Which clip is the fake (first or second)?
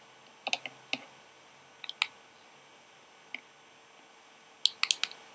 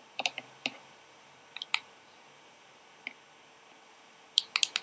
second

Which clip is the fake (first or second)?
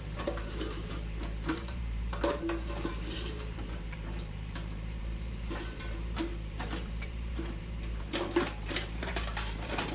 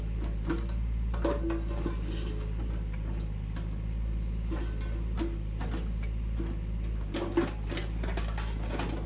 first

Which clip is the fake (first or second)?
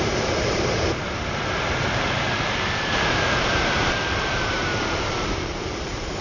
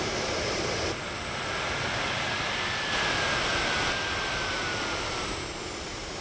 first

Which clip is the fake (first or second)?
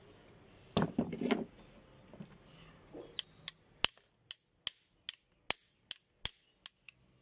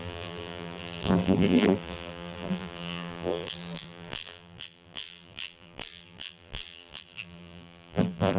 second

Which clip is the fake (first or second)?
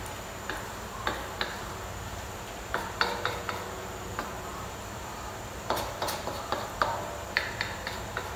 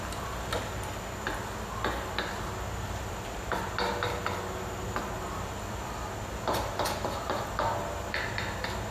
first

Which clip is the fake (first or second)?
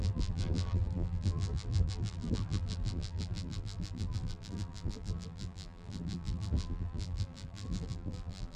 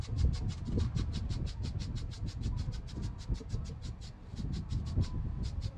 first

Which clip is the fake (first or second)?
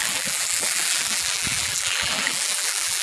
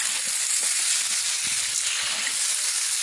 first